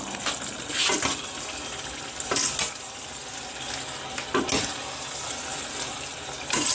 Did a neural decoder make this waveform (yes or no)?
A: no